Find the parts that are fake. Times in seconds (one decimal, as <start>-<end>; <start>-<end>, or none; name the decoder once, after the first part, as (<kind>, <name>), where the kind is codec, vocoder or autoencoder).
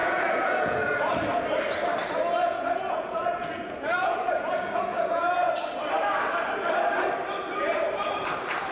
0.0-1.1 (vocoder, Vocos); 2.4-5.5